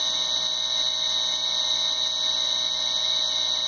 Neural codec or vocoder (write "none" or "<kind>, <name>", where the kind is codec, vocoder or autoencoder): none